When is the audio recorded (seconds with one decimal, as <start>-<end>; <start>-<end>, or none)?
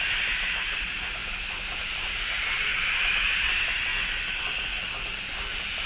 1.2-1.8; 3.9-5.4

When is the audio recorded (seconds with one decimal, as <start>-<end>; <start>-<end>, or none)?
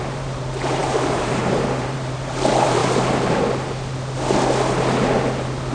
2.8-5.7